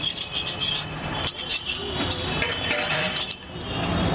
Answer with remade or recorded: recorded